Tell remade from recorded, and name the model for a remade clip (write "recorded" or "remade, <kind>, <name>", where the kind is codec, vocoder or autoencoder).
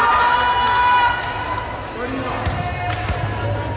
recorded